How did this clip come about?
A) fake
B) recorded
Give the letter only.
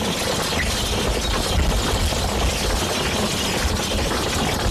B